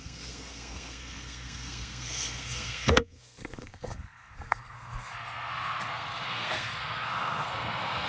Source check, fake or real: fake